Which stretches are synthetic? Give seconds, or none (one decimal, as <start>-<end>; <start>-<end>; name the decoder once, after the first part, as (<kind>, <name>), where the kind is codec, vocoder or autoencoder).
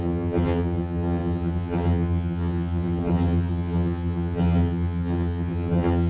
0.0-6.1 (vocoder, HiFi-GAN)